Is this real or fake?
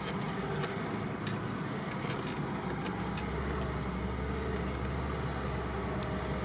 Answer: real